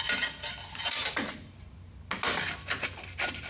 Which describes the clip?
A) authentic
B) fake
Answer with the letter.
A